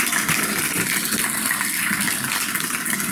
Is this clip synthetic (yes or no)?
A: no